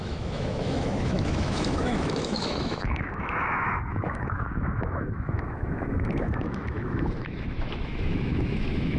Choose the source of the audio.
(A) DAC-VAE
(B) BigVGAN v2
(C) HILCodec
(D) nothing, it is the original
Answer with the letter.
A